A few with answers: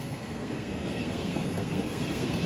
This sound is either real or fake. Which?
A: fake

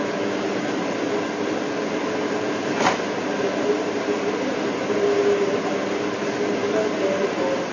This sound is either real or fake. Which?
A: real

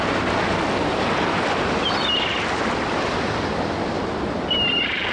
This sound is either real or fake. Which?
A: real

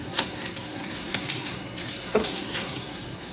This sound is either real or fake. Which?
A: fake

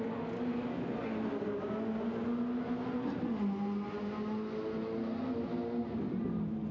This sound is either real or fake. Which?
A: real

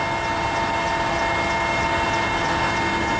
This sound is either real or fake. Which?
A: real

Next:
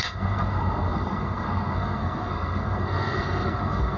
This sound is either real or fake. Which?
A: fake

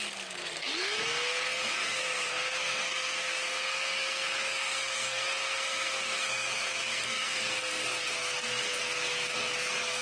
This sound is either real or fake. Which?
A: fake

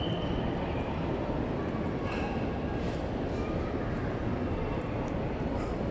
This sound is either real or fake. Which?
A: real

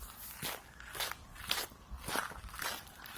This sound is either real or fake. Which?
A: real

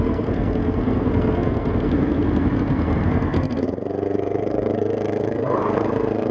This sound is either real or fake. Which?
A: fake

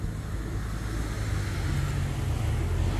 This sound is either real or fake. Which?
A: real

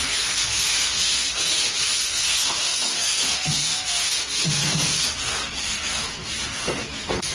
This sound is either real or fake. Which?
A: fake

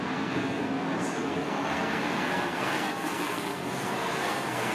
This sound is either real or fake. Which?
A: fake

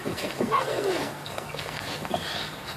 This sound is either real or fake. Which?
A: fake